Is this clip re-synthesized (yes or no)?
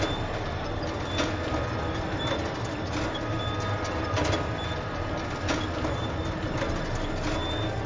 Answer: no